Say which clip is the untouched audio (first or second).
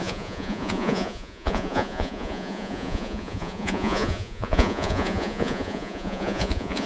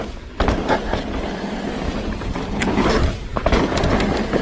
second